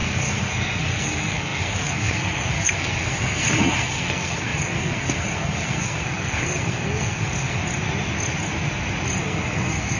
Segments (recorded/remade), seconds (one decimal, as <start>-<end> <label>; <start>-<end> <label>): 0.0-7.6 remade; 7.6-9.2 recorded; 9.2-10.0 remade